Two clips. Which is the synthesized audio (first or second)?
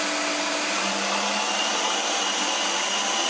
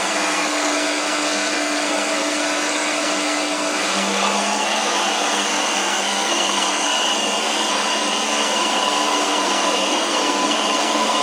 second